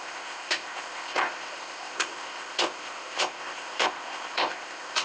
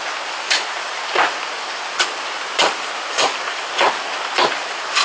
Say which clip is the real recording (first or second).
second